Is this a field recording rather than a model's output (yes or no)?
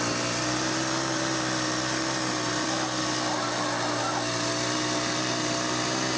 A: yes